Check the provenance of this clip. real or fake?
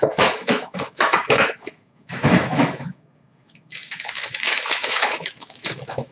fake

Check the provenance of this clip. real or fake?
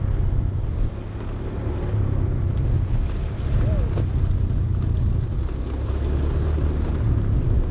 real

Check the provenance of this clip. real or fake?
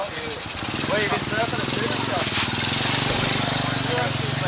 real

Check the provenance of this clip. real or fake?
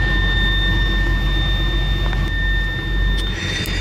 real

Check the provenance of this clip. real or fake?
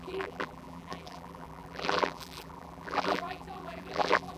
fake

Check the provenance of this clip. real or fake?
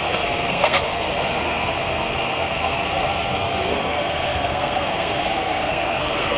fake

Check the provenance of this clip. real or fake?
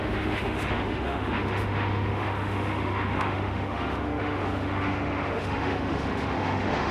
fake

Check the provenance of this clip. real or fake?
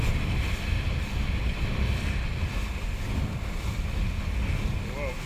real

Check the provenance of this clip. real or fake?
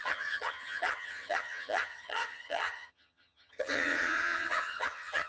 fake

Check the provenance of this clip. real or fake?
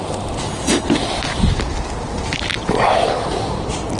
real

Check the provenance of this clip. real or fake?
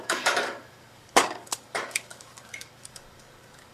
fake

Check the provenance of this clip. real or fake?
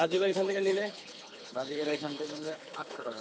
fake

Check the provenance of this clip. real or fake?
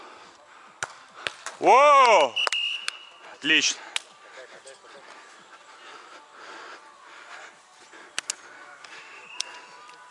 real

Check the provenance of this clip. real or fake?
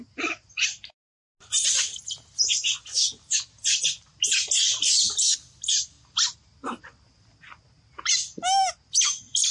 real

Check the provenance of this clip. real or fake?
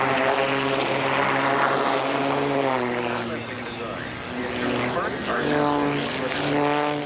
real